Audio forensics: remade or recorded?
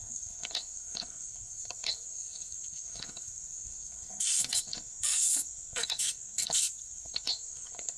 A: remade